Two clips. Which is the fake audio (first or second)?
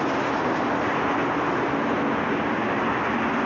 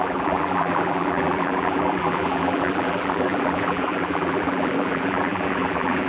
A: second